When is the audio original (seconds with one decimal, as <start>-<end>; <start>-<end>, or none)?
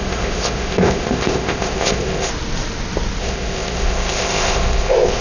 2.3-3.2